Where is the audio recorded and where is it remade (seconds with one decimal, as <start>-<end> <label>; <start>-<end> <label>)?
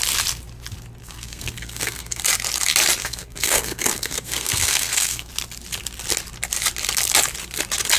0.0-1.0 recorded; 1.0-2.2 remade; 2.2-3.0 recorded; 3.0-5.3 remade; 5.3-8.0 recorded